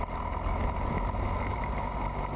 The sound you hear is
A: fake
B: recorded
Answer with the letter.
B